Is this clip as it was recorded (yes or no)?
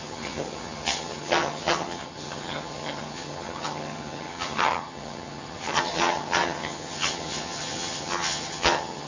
no